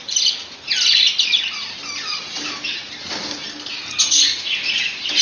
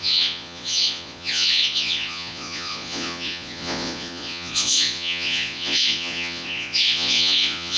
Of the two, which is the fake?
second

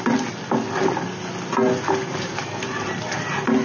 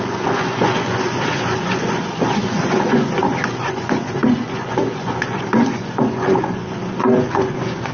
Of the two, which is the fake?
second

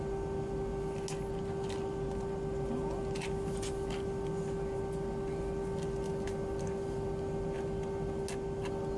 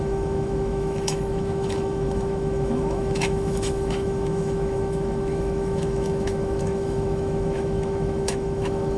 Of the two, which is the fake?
second